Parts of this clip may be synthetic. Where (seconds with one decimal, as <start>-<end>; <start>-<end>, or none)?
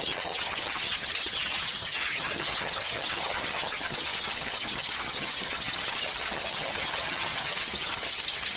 0.0-8.6